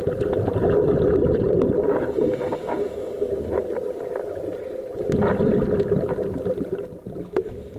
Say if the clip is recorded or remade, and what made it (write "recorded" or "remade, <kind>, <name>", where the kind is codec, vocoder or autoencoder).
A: recorded